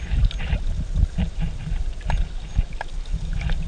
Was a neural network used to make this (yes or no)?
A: no